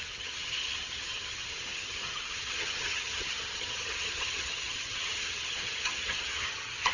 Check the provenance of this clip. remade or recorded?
remade